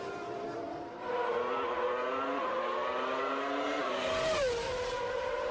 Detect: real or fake real